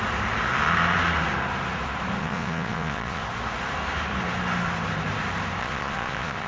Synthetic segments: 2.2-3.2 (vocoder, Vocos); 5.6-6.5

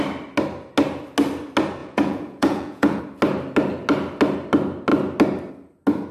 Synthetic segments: 1.8-3.0 (vocoder, Vocos)

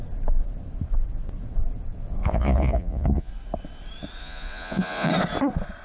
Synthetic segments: 2.2-3.3 (vocoder, Vocos); 4.2-5.1

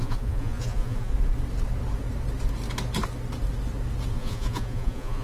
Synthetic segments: 0.0-1.1 (vocoder, Vocos); 4.1-5.2